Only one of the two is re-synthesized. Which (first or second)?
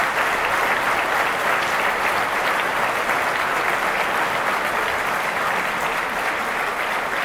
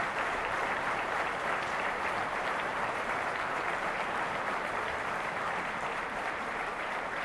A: second